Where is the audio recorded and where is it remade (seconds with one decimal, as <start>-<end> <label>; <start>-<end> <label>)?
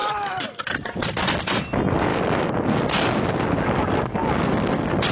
0.0-5.1 recorded